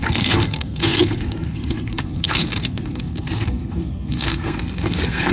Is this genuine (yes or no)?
no